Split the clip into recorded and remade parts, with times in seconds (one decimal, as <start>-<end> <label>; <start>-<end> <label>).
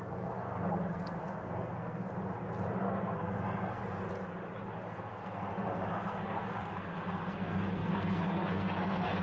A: 0.0-2.1 remade; 2.1-2.8 recorded; 2.8-3.8 remade; 3.8-4.9 recorded; 4.9-9.2 remade